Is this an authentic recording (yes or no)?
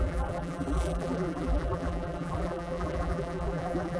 no